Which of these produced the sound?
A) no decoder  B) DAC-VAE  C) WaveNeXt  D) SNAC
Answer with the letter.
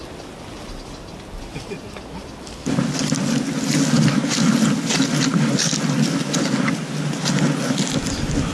A